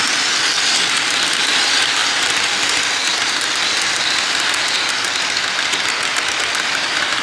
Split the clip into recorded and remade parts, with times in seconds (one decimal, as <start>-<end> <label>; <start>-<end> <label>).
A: 0.0-0.7 recorded; 0.7-1.5 remade; 1.5-7.2 recorded